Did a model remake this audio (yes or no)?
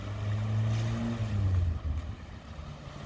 no